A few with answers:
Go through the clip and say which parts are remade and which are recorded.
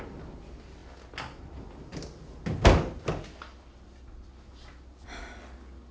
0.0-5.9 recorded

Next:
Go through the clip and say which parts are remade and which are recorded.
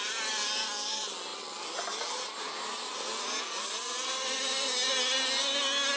0.0-6.0 recorded